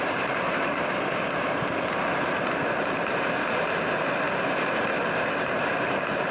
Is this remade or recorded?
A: recorded